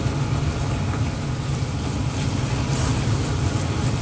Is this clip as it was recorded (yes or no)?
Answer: yes